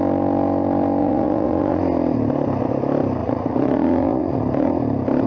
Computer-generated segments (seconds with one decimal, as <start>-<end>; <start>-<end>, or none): 1.0-1.8; 3.2-4.7